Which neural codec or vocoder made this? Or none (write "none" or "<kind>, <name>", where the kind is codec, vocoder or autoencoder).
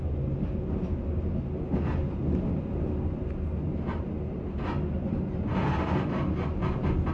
none